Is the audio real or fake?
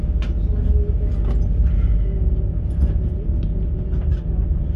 real